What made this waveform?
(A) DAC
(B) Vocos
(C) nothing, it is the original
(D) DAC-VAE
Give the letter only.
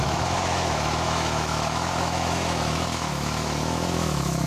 D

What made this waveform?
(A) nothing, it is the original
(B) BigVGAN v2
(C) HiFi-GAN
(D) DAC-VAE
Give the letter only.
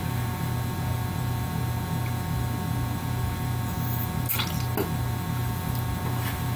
A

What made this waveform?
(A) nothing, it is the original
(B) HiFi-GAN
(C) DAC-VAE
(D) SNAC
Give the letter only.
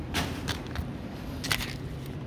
A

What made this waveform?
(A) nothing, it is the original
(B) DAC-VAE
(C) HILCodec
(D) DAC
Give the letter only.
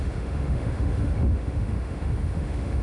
B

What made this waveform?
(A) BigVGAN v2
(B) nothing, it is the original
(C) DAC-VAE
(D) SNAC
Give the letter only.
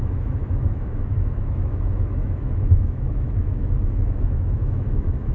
C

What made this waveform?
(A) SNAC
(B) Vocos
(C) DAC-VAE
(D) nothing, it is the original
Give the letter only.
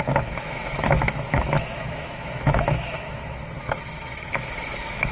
C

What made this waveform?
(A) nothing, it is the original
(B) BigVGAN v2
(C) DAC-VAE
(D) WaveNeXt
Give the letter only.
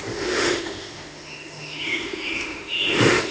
C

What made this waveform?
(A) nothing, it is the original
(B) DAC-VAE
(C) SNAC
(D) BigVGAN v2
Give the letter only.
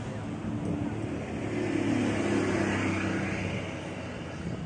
A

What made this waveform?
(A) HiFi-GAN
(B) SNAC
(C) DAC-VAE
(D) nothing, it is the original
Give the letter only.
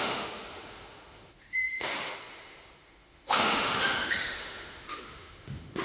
C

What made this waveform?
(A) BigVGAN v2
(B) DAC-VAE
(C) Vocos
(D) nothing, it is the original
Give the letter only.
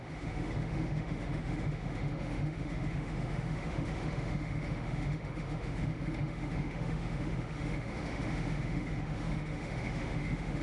B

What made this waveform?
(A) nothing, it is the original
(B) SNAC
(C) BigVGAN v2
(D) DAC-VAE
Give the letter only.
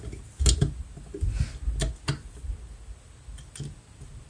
A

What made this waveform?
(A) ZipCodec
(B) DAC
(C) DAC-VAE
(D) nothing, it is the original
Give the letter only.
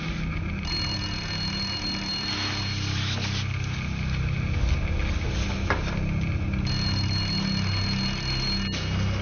D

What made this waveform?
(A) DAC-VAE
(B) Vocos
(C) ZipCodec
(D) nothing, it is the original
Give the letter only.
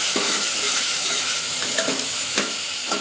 A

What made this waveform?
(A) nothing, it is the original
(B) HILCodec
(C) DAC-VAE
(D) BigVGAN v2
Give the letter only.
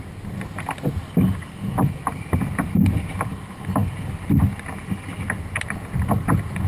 A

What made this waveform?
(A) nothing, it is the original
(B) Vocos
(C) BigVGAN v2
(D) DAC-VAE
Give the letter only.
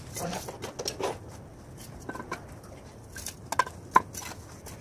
A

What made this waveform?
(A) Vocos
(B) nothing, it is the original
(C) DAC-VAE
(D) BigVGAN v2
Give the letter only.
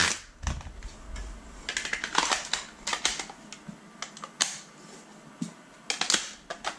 B